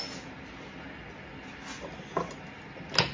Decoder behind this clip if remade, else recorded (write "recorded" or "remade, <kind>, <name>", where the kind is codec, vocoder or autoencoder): recorded